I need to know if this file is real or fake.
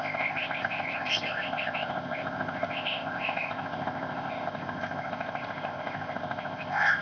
fake